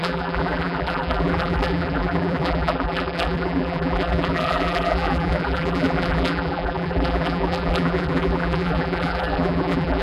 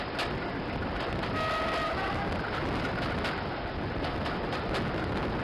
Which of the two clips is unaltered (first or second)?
second